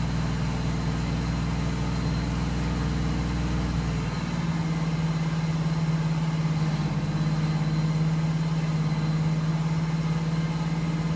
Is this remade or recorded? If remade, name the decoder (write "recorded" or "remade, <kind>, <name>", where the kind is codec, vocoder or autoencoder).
recorded